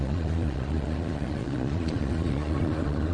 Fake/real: fake